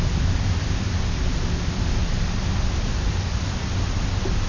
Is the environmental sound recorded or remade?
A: recorded